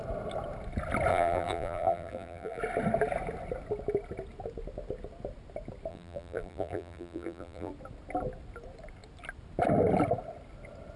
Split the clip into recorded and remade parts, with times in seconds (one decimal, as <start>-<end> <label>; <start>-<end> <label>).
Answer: 0.0-1.1 recorded; 1.1-2.6 remade; 2.6-5.9 recorded; 5.9-7.7 remade; 7.7-11.0 recorded